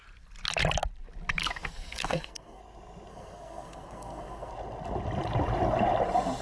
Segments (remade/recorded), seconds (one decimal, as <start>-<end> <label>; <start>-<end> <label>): 0.0-1.4 recorded; 1.4-2.6 remade; 2.6-3.1 recorded; 3.1-4.5 remade; 4.5-6.4 recorded